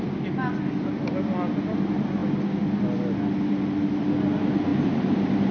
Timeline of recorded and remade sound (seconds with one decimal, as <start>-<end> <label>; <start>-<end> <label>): 0.0-5.5 recorded

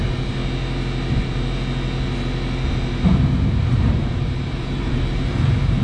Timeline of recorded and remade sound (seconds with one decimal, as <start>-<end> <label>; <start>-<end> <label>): 0.0-0.4 remade; 0.4-3.9 recorded; 3.9-5.8 remade